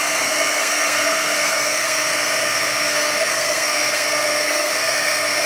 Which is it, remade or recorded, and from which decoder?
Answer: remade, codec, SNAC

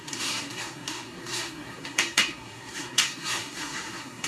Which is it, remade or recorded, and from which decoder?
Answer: remade, codec, SNAC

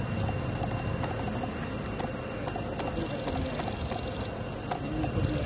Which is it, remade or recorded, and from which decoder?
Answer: recorded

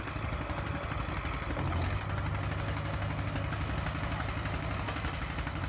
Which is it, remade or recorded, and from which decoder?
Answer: recorded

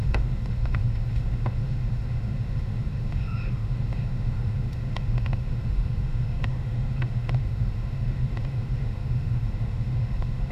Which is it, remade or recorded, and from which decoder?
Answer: remade, autoencoder, DAC-VAE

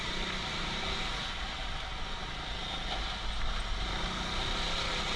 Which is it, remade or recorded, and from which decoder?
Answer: recorded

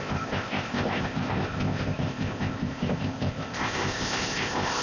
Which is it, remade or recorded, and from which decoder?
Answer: remade, codec, ZipCodec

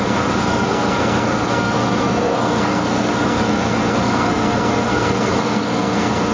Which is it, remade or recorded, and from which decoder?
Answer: remade, codec, SNAC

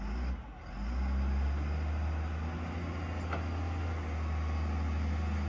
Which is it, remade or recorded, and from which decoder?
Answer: recorded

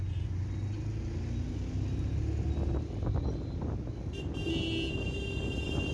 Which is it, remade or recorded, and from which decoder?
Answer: recorded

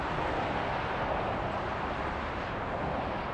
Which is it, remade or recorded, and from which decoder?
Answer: recorded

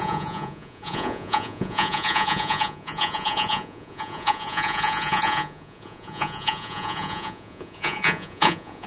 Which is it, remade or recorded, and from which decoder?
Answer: remade, vocoder, Vocos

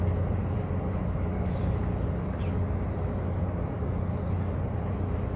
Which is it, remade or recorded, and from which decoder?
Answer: recorded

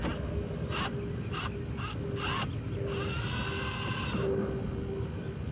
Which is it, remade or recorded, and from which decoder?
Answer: recorded